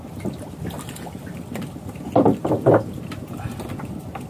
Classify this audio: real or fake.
real